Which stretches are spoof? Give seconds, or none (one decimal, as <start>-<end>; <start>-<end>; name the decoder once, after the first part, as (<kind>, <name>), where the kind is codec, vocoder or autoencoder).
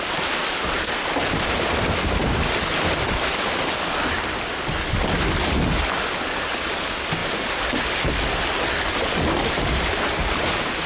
none